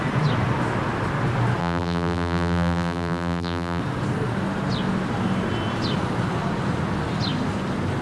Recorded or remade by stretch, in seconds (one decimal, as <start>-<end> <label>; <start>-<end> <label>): 0.0-1.6 recorded; 1.6-3.8 remade; 3.8-8.0 recorded

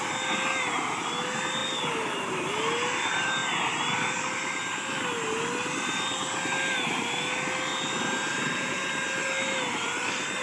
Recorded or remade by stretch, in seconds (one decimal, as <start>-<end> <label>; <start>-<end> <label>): 0.0-1.6 recorded; 1.6-2.5 remade; 2.5-10.4 recorded

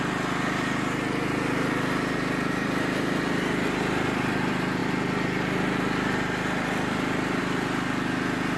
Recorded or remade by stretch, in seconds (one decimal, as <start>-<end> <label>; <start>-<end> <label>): 0.0-8.6 recorded

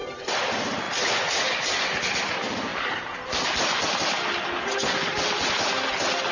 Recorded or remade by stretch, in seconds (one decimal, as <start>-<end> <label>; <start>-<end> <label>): 0.0-0.8 remade; 0.8-6.3 recorded